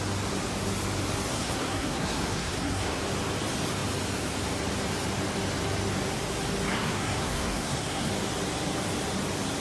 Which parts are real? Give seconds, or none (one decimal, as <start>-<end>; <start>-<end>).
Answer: 0.0-1.3; 3.0-6.7; 8.1-9.6